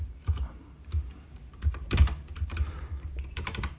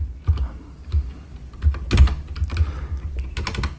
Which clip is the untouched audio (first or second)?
second